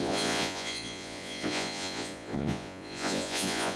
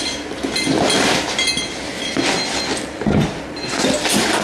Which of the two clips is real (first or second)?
second